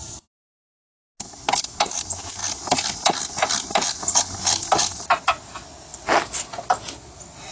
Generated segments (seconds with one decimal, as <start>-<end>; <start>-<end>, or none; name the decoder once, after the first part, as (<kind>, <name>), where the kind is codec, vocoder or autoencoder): 5.9-6.8 (vocoder, BigVGAN v2)